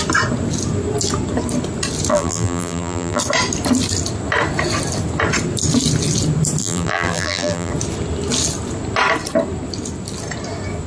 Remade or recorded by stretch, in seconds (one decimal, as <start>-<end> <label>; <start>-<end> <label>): 0.0-2.1 recorded; 2.1-3.2 remade; 3.2-6.6 recorded; 6.6-7.7 remade; 7.7-10.9 recorded